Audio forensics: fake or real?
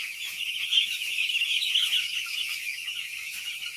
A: fake